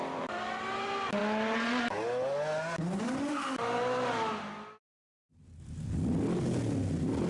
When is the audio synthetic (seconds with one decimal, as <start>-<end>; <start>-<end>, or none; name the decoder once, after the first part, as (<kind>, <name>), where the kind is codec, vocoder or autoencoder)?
none